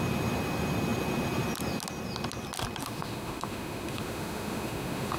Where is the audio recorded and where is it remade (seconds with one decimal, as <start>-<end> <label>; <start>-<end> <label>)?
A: 0.0-2.8 recorded; 2.8-5.2 remade